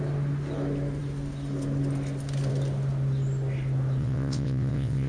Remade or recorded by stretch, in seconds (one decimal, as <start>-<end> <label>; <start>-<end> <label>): 0.0-4.0 recorded; 4.0-5.1 remade